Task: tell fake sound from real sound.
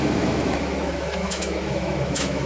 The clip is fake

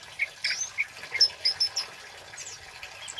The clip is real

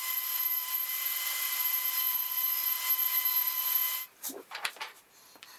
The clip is fake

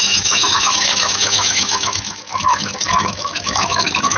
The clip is fake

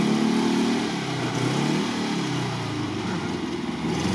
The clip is real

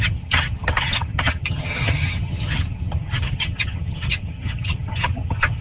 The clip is fake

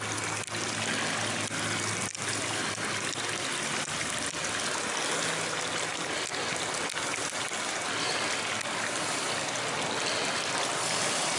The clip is real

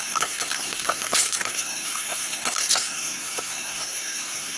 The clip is fake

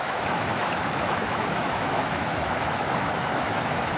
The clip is fake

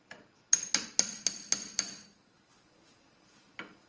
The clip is real